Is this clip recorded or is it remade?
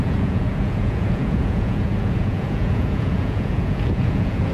remade